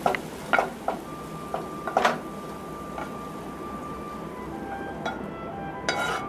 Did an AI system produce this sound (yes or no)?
no